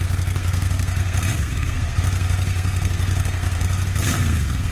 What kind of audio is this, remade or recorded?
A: remade